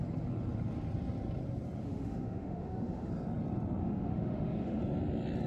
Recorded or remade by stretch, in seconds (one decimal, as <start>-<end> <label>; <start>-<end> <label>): 0.0-1.8 recorded; 1.8-3.1 remade; 3.1-3.8 recorded; 3.8-4.8 remade; 4.8-5.5 recorded